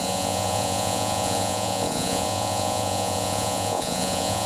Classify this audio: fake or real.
fake